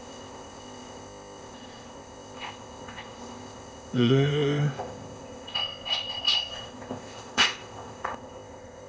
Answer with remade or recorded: remade